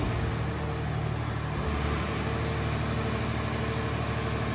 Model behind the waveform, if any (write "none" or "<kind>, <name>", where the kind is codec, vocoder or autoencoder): none